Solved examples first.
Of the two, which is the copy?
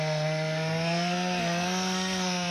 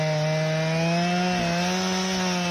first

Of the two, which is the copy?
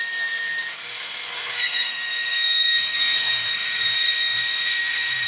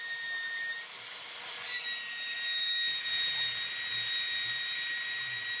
first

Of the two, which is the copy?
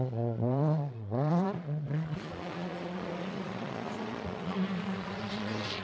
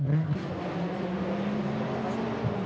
first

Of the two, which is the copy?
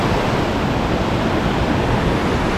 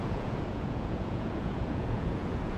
second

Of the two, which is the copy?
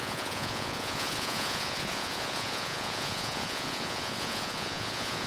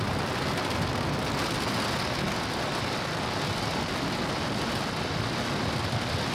first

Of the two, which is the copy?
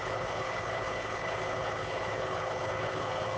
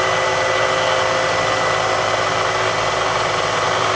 first